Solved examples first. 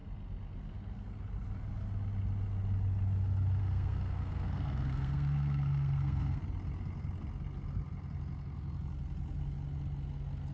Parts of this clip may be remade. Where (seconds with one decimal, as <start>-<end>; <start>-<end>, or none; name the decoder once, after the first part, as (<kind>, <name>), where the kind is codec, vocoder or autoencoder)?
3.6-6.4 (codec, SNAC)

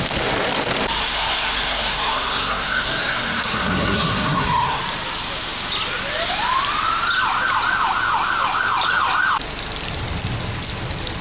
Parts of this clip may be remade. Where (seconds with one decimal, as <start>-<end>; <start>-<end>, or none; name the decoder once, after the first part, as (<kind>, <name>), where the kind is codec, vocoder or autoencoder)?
1.0-4.8 (codec, SNAC)

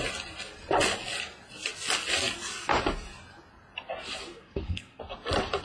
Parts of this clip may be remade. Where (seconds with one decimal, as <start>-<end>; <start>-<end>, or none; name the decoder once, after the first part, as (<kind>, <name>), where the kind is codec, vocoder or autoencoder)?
4.3-5.0 (codec, SNAC)